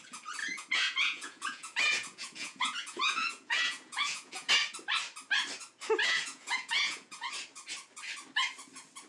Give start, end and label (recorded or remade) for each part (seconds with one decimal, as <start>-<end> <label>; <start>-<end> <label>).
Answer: 0.0-0.4 recorded; 0.4-4.5 remade; 4.5-6.0 recorded; 6.0-7.3 remade; 7.3-9.1 recorded